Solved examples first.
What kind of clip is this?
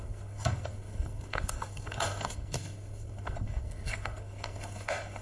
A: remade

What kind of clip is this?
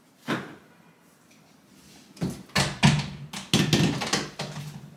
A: recorded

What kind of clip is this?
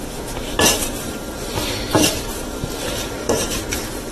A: remade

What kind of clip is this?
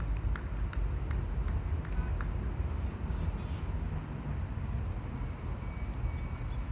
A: recorded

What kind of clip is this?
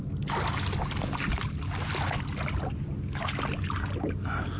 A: recorded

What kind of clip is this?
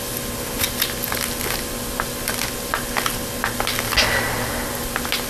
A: recorded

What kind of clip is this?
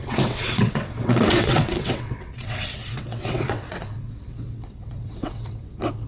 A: remade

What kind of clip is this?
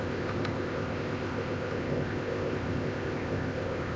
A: remade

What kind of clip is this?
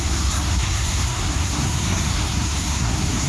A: remade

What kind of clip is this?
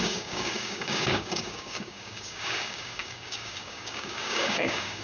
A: remade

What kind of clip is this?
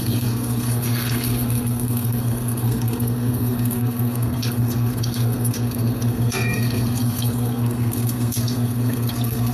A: remade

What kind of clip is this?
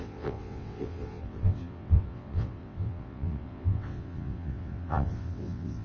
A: remade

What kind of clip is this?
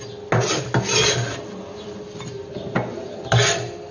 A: recorded